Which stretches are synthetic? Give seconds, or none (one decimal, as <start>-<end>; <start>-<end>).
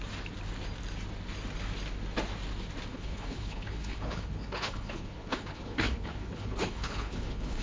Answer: 2.9-7.6